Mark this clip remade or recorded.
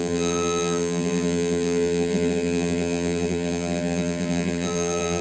remade